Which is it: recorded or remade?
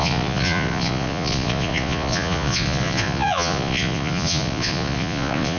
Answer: remade